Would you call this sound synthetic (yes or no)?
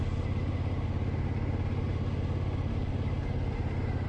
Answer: no